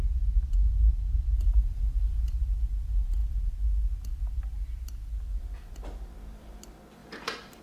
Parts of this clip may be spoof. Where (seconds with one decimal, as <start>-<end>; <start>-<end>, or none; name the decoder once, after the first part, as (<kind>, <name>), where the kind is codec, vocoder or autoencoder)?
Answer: 0.0-2.4 (vocoder, BigVGAN v2); 7.0-7.6